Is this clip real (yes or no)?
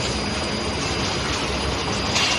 yes